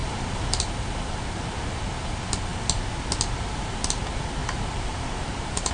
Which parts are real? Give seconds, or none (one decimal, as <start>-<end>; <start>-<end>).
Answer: 0.6-4.4